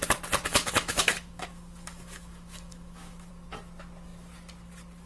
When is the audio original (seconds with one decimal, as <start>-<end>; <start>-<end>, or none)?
0.0-0.5; 3.3-5.1